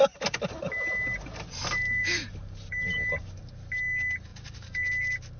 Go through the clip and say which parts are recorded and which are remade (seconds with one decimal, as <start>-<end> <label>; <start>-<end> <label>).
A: 0.0-1.6 recorded; 1.6-3.4 remade; 3.4-4.3 recorded; 4.3-4.9 remade; 4.9-5.4 recorded